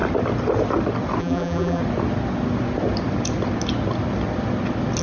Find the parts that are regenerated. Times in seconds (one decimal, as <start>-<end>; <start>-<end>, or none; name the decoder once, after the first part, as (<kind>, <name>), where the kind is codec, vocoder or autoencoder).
1.2-1.8 (vocoder, BigVGAN v2)